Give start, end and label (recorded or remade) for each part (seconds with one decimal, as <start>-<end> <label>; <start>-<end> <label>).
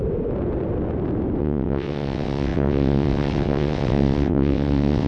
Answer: 0.0-1.4 recorded; 1.4-5.1 remade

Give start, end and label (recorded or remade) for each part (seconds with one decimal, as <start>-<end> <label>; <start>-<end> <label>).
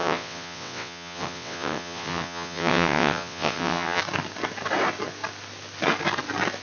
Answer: 0.0-4.0 remade; 4.0-6.6 recorded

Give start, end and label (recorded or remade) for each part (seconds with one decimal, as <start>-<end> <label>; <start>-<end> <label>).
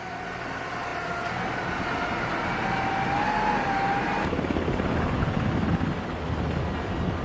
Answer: 0.0-7.2 recorded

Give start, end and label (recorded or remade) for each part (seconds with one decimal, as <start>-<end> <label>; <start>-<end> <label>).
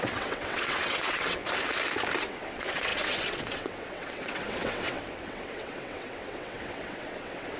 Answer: 0.0-1.4 remade; 1.4-2.2 recorded; 2.2-7.6 remade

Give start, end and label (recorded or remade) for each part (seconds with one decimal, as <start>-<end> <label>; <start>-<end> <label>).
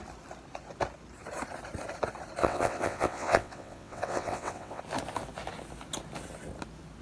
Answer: 0.0-2.4 recorded; 2.4-4.8 remade; 4.8-7.0 recorded